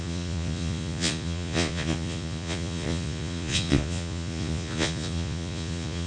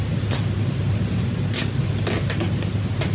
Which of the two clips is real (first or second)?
second